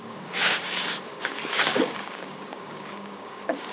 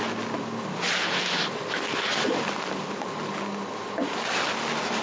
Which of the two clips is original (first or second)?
second